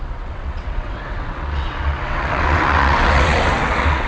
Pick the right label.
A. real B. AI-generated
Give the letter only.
B